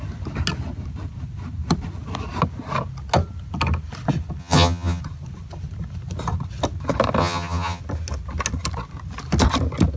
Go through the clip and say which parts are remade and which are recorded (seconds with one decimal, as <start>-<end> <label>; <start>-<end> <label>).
0.0-4.4 recorded; 4.4-5.0 remade; 5.0-7.2 recorded; 7.2-7.8 remade; 7.8-10.0 recorded